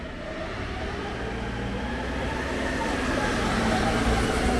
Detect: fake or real real